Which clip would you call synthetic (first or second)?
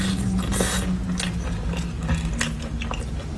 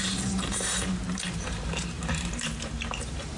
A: second